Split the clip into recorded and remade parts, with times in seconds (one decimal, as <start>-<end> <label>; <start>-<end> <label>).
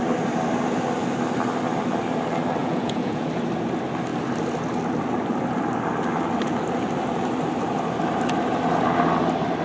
0.0-2.6 recorded; 2.6-3.3 remade; 3.3-9.6 recorded